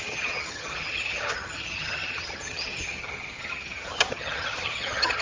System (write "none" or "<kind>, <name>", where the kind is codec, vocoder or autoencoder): vocoder, HiFi-GAN